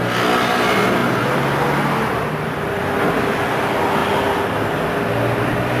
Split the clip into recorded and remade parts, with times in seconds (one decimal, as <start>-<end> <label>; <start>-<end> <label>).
0.0-5.8 recorded